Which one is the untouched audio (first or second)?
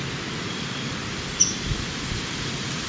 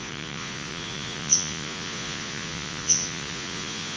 first